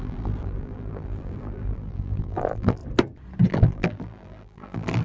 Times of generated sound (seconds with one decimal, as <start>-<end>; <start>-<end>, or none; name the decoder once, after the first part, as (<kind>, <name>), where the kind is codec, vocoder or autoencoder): 0.0-2.8 (vocoder, BigVGAN v2); 3.5-5.0